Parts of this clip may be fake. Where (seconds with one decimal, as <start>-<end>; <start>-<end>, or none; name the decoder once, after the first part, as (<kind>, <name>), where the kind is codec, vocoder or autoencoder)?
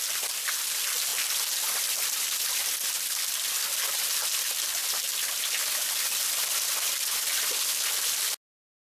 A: none